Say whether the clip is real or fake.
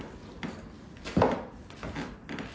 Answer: real